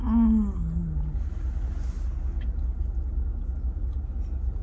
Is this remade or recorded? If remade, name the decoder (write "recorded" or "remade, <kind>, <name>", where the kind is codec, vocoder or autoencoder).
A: recorded